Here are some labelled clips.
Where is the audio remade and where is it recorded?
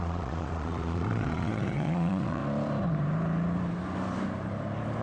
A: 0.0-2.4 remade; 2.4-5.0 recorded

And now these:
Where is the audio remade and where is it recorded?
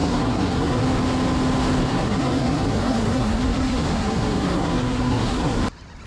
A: 0.0-0.8 remade; 0.8-1.9 recorded; 1.9-5.6 remade; 5.6-6.1 recorded